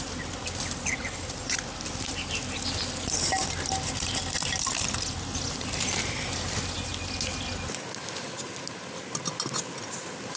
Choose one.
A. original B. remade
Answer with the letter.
A